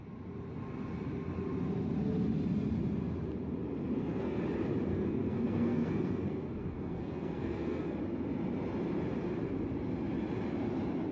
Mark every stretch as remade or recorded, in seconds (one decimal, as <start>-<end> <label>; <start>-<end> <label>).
0.0-3.8 recorded; 3.8-4.4 remade; 4.4-4.9 recorded; 4.9-8.0 remade; 8.0-11.1 recorded